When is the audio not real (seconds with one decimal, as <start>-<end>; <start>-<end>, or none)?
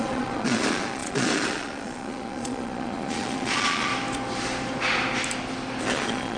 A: 0.0-3.9; 5.8-6.4